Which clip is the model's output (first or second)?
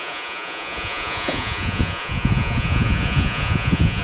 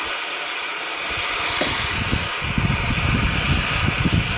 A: first